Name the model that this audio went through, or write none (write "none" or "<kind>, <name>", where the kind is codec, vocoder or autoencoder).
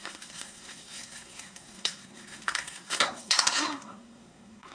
codec, SNAC